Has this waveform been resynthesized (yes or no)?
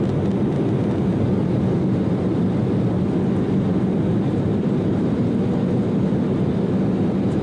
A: no